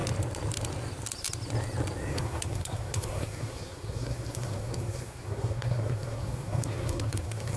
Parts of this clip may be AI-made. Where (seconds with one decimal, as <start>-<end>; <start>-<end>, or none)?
2.1-7.6